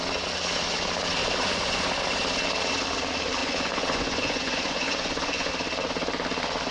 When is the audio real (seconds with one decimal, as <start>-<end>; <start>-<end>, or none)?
0.0-1.2; 2.0-3.4; 5.5-6.7